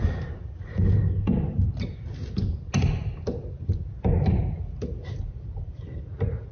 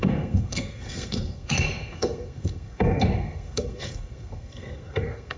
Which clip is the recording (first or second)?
first